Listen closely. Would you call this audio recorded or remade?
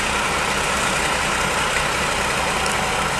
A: recorded